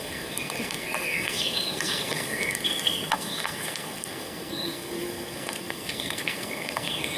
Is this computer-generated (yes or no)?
yes